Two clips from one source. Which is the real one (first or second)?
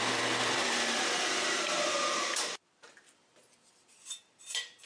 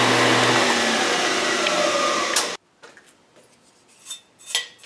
second